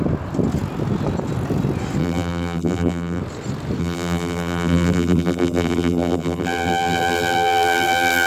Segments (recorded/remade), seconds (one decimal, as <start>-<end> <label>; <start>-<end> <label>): 0.0-2.0 recorded; 2.0-3.2 remade; 3.2-3.8 recorded; 3.8-8.3 remade